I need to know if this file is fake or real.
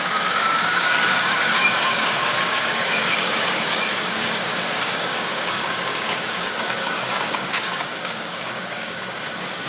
fake